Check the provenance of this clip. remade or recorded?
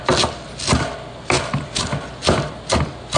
recorded